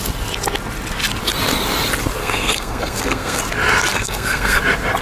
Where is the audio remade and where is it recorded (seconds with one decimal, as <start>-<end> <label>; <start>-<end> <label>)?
0.0-2.2 recorded; 2.2-3.4 remade; 3.4-3.9 recorded; 3.9-4.6 remade; 4.6-5.0 recorded